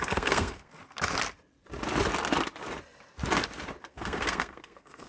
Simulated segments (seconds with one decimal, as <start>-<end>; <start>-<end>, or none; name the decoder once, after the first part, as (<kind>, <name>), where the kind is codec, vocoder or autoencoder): 0.0-0.7 (codec, SNAC); 3.8-5.1